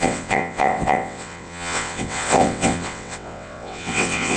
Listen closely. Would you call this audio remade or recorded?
remade